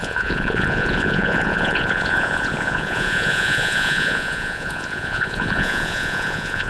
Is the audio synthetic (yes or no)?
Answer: yes